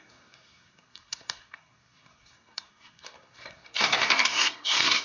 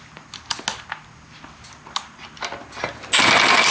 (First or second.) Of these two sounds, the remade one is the first